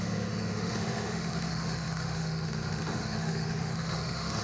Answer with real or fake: fake